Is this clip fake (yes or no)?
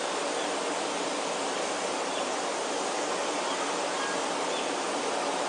no